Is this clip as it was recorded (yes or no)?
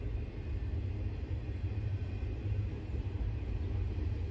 yes